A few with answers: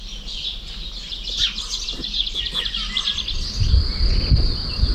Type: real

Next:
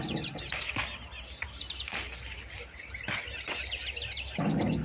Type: real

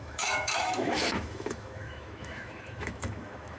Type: fake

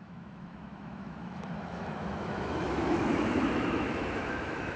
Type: fake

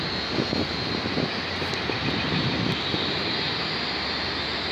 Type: real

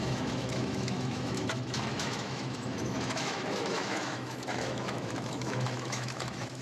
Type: fake